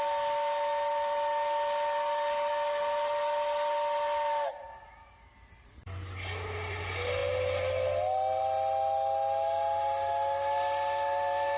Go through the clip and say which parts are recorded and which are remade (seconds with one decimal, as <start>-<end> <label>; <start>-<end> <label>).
0.0-11.6 recorded